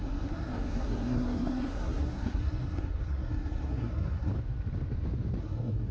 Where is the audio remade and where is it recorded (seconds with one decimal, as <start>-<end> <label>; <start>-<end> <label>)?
0.0-4.3 remade; 4.3-5.4 recorded; 5.4-5.9 remade